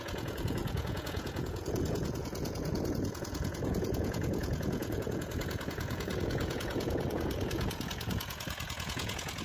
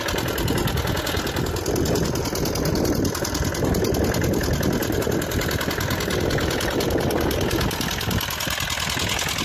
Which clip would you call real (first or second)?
second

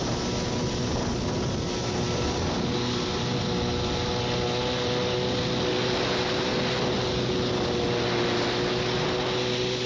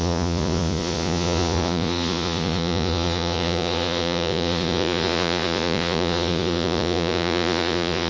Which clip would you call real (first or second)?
first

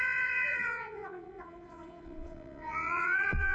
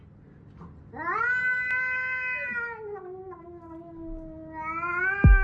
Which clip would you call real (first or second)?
second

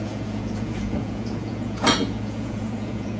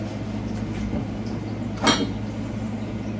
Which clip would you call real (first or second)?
second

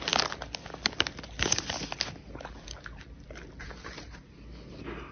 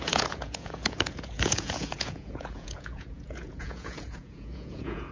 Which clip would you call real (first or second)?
first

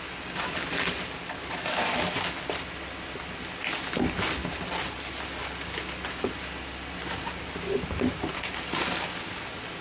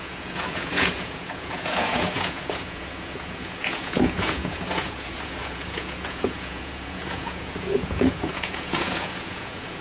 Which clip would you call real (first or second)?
first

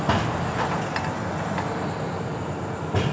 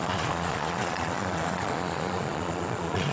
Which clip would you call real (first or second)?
first